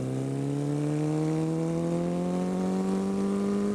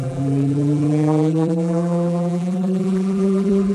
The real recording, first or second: first